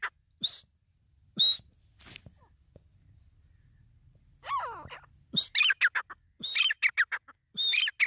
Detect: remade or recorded recorded